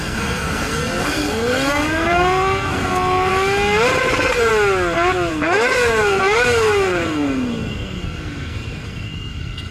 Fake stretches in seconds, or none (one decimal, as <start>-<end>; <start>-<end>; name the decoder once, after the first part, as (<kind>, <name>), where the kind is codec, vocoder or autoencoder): 0.0-3.3 (codec, SNAC); 4.0-4.5; 5.3-9.7